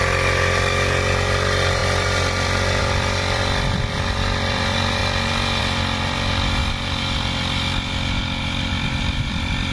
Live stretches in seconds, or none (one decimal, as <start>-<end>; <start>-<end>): 5.0-5.6; 6.6-9.2